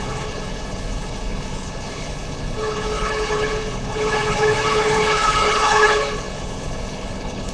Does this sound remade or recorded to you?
remade